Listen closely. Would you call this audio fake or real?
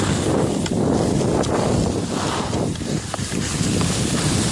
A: real